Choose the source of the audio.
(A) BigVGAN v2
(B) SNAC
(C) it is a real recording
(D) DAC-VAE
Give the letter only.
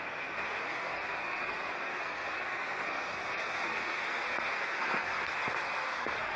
B